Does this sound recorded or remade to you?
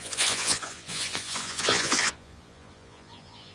remade